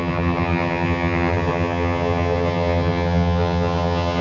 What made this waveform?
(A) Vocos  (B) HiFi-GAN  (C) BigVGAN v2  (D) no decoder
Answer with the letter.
B